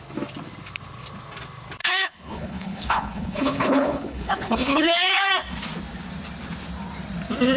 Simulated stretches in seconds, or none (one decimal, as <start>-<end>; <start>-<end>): 1.8-5.3